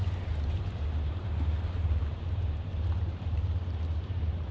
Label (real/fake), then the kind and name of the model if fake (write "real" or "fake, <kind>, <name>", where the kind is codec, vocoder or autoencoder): fake, vocoder, BigVGAN v2